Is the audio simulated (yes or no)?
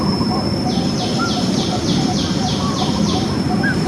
yes